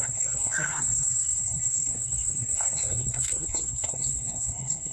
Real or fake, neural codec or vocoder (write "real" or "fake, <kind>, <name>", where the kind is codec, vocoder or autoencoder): fake, codec, SNAC